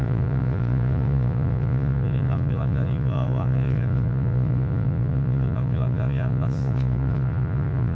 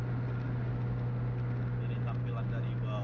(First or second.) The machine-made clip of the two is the first